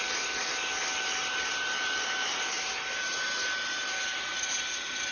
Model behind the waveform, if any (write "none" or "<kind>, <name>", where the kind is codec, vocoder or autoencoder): none